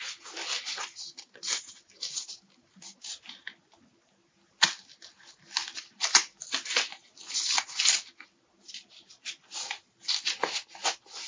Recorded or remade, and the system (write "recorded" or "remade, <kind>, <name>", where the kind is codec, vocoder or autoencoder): recorded